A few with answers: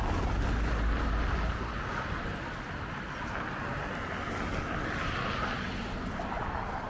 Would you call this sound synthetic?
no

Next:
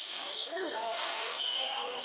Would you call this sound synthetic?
yes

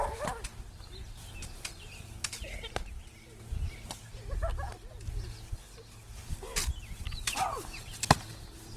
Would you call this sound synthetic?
no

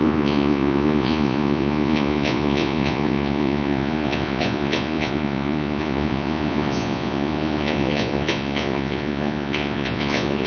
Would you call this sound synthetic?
yes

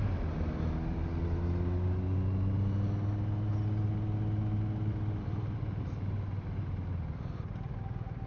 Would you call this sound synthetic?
no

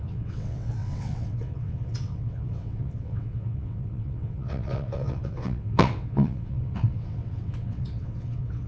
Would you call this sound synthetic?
yes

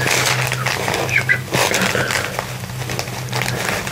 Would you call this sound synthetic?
no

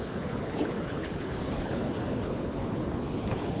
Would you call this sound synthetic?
yes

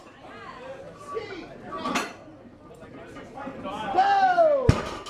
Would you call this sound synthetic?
no